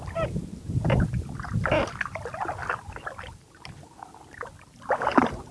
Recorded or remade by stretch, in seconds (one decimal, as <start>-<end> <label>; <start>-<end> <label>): 0.0-5.5 recorded